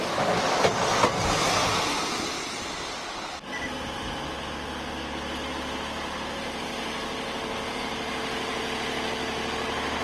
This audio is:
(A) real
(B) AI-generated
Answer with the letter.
A